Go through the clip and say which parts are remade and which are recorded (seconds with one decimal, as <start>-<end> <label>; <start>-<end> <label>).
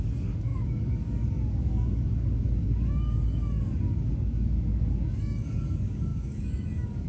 0.0-7.1 remade